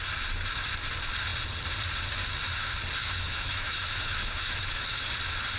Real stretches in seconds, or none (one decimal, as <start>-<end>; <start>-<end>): 0.0-3.0; 5.1-5.6